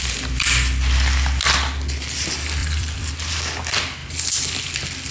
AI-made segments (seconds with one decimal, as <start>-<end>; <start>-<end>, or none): 2.6-3.1